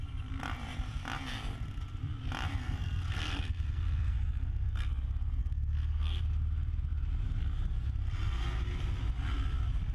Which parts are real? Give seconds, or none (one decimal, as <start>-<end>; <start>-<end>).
0.0-2.6; 4.9-5.4; 6.2-9.9

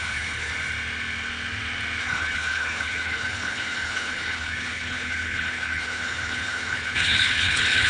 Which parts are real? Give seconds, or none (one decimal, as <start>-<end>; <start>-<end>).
0.5-2.0